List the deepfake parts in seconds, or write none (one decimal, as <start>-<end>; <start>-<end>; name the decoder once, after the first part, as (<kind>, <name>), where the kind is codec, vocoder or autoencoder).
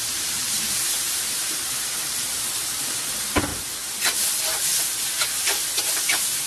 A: 0.0-3.5 (vocoder, BigVGAN v2); 6.0-6.5